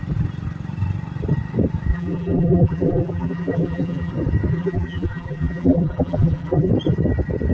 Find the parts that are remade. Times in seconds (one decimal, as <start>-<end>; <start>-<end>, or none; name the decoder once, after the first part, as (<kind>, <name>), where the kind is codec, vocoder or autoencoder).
1.9-4.1 (vocoder, BigVGAN v2); 4.5-6.7